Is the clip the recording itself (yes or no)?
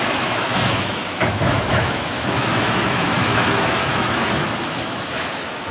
no